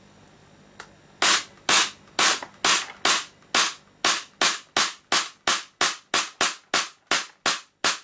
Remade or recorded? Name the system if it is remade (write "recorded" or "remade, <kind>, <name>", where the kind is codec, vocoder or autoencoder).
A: recorded